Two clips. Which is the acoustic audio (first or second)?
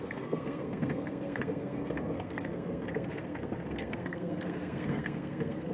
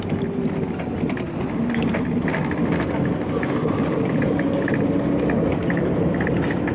second